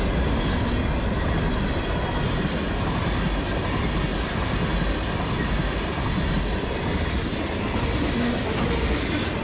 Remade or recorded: recorded